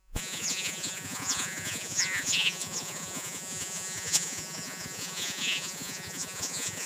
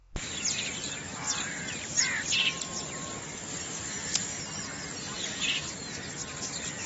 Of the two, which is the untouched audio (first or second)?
second